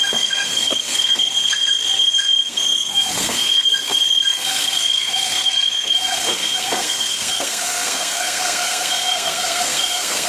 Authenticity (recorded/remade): remade